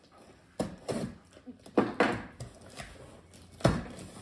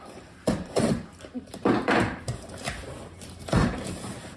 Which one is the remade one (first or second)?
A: second